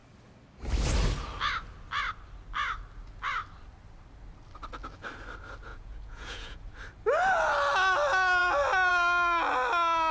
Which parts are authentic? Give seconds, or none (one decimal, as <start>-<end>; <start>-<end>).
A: 0.0-5.7; 6.6-10.1